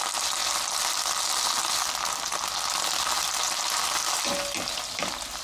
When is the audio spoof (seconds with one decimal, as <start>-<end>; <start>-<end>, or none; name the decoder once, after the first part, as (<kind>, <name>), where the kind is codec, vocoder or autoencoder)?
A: none